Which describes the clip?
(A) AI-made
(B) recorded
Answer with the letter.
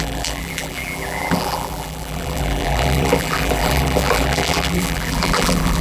A